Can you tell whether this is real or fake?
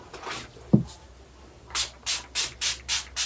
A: real